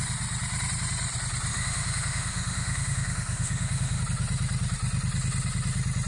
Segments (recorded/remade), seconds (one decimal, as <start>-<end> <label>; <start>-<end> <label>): 0.0-1.5 recorded; 1.5-4.0 remade; 4.0-6.1 recorded